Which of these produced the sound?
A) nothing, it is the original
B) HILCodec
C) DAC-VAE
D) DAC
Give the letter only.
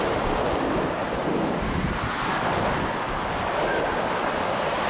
A